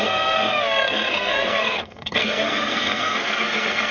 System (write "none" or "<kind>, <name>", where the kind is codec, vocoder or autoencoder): codec, SNAC